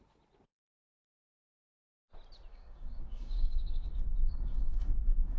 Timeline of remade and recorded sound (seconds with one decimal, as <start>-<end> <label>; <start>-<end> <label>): 0.0-2.5 recorded; 2.5-5.4 remade